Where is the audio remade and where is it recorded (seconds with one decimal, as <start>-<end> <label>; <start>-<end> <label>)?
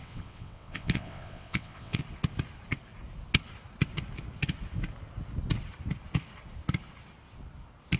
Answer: 0.0-2.0 remade; 2.0-8.0 recorded